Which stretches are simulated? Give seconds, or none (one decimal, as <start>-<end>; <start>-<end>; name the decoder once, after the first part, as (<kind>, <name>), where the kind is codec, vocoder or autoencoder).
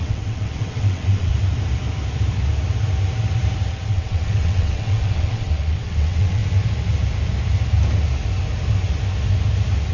0.0-1.3 (vocoder, WaveNeXt); 3.7-6.4